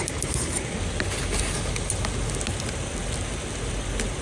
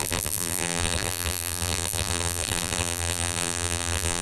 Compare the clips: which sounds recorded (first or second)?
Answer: first